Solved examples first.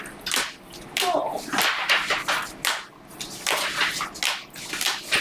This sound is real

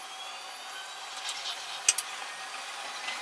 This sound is real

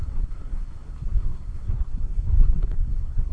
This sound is fake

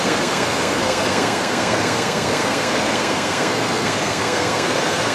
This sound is fake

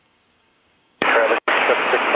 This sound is fake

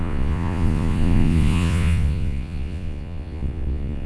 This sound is fake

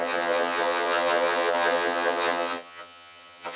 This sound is fake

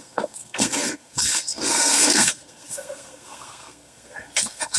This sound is fake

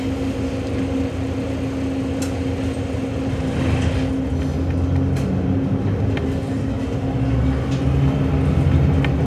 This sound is real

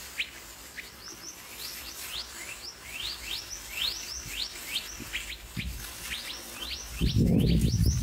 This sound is real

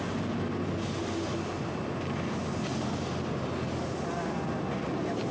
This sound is real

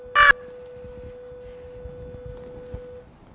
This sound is real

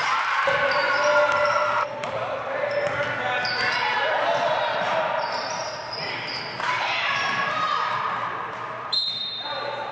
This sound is fake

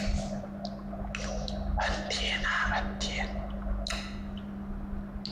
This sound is real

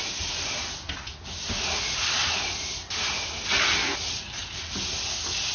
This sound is real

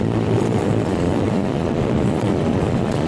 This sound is fake